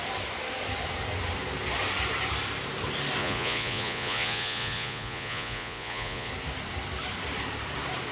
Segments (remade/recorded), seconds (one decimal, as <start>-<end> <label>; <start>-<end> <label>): 0.0-3.2 recorded; 3.2-6.3 remade; 6.3-8.1 recorded